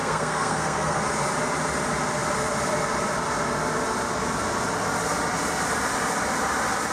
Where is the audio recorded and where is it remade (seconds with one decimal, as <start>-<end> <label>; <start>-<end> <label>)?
0.0-1.0 remade; 1.0-6.9 recorded